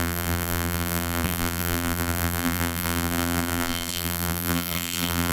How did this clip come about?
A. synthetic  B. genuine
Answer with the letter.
A